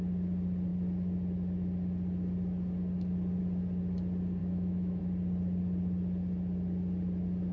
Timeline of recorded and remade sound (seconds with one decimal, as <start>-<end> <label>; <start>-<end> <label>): 0.0-4.4 recorded; 4.4-5.0 remade; 5.0-7.5 recorded